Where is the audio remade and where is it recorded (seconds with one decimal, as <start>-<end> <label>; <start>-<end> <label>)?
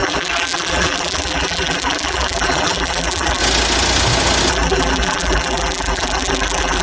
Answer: 0.0-3.4 remade; 3.4-4.5 recorded; 4.5-6.8 remade